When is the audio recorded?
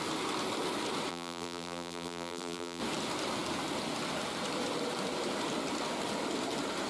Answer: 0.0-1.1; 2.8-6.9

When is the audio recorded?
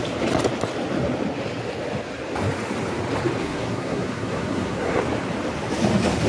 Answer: 0.0-3.4; 5.0-6.3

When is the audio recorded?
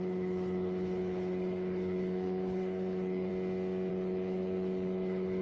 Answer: 3.3-3.9